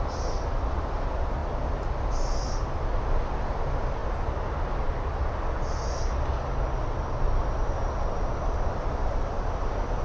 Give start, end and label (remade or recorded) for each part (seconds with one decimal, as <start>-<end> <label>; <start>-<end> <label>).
0.0-10.0 recorded